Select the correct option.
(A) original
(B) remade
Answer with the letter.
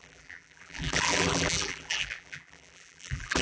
B